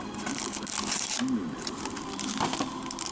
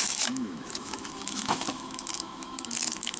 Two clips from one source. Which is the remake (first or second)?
second